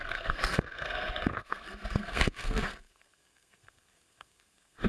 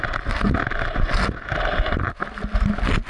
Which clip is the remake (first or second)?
first